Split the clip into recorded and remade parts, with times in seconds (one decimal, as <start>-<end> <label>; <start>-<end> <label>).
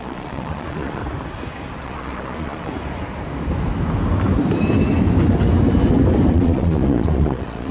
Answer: 0.0-1.0 remade; 1.0-1.8 recorded; 1.8-2.7 remade; 2.7-6.3 recorded; 6.3-7.7 remade